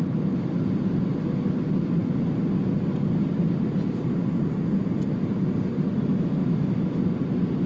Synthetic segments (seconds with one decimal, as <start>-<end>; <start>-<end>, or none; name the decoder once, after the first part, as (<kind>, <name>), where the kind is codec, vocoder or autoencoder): 6.4-7.0 (autoencoder, DAC-VAE)